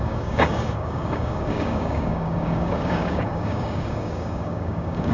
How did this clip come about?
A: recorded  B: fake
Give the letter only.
B